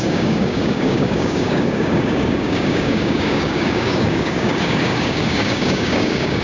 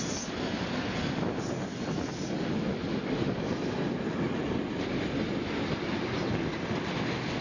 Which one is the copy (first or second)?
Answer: first